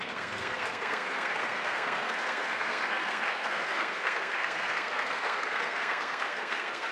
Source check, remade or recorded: remade